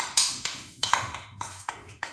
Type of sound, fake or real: fake